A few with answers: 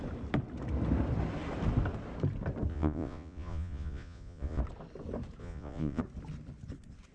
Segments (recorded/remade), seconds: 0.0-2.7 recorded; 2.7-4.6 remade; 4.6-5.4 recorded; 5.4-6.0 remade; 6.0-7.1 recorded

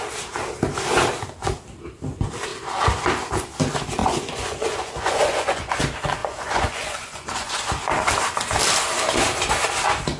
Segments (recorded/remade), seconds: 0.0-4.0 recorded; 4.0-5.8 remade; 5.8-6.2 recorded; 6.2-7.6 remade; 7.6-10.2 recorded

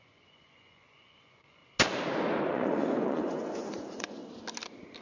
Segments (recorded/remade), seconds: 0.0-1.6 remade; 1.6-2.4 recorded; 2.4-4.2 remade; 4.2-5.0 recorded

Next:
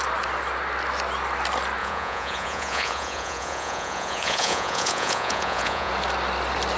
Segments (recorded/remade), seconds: 0.0-1.8 recorded; 1.8-5.9 remade; 5.9-6.8 recorded